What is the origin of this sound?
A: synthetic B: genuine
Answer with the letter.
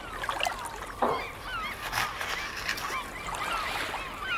B